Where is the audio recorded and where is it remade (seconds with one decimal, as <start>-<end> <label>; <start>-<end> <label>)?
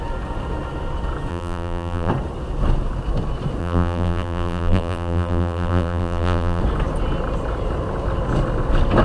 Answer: 0.0-1.3 recorded; 1.3-2.1 remade; 2.1-3.6 recorded; 3.6-6.6 remade; 6.6-9.0 recorded